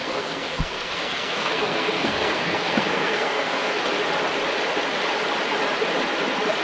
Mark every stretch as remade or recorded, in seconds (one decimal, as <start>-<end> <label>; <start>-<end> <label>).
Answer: 0.0-3.8 remade; 3.8-6.6 recorded